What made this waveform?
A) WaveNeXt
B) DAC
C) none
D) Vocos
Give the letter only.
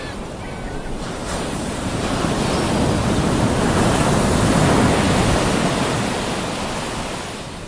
C